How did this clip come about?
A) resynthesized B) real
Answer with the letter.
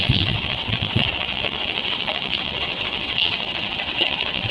A